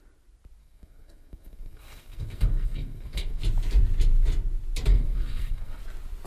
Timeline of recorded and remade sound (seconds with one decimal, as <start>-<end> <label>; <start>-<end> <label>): 0.0-0.6 recorded; 0.6-3.4 remade; 3.4-4.9 recorded; 4.9-5.8 remade; 5.8-6.3 recorded